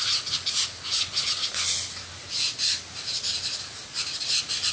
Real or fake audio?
real